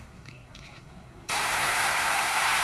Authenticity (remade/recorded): remade